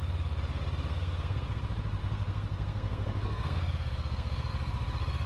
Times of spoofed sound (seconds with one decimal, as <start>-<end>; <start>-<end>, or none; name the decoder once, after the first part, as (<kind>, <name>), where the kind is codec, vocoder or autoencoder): 0.9-1.6 (codec, SNAC); 2.0-4.5